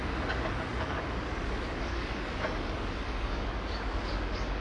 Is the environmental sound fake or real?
fake